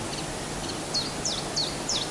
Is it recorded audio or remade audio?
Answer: recorded